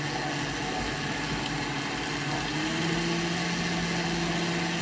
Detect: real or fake real